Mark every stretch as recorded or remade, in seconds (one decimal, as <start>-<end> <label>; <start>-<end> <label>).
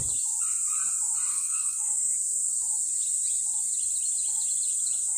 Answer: 0.0-1.3 recorded; 1.3-2.1 remade; 2.1-5.2 recorded